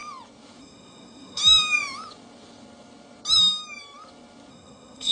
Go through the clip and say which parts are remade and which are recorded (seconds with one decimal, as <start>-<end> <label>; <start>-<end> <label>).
0.0-0.6 recorded; 0.6-1.4 remade; 1.4-4.5 recorded; 4.5-5.1 remade